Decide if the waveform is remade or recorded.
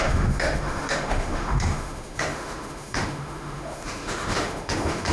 remade